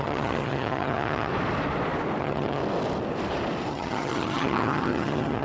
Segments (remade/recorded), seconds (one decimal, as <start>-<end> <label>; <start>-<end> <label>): 0.0-1.3 remade; 1.3-2.2 recorded; 2.2-2.6 remade; 2.6-3.7 recorded; 3.7-5.4 remade